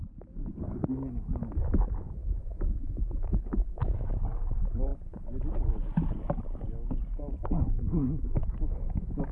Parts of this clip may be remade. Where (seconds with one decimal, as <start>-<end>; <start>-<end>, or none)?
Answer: 2.2-4.2; 8.4-9.3